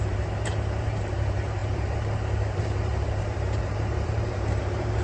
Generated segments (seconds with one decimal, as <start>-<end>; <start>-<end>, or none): 0.0-5.0